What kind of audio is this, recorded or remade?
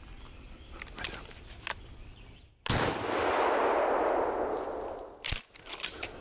recorded